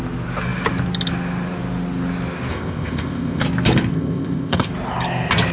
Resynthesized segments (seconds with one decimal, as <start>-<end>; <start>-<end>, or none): 2.5-3.4; 3.9-4.7